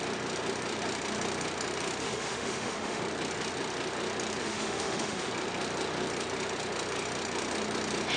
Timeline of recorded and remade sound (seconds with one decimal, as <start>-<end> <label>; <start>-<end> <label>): 0.0-2.0 recorded; 2.0-3.0 remade; 3.0-4.4 recorded; 4.4-5.3 remade; 5.3-8.2 recorded